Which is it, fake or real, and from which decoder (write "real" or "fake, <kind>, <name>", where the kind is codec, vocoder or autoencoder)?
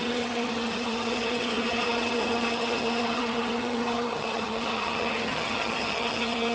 fake, vocoder, HiFi-GAN